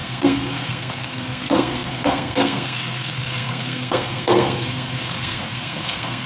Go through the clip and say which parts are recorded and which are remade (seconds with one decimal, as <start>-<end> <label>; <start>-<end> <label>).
0.0-6.3 remade